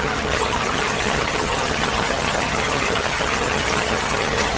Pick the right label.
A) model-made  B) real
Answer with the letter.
A